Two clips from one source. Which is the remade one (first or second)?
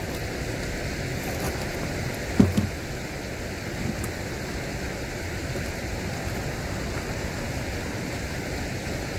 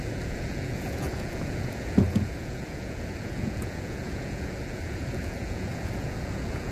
second